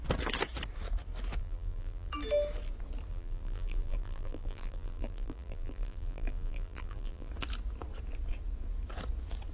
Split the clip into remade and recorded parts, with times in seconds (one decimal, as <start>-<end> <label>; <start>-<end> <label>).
0.0-1.4 recorded; 1.4-2.1 remade; 2.1-3.1 recorded; 3.1-7.3 remade; 7.3-9.5 recorded